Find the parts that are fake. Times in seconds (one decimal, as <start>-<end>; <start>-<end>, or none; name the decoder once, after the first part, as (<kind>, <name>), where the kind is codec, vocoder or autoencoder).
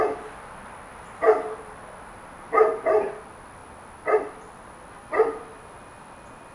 none